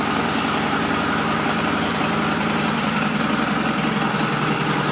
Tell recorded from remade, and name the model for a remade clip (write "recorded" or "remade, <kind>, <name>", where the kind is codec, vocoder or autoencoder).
recorded